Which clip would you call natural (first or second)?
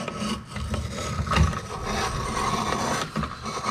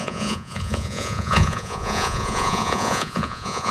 first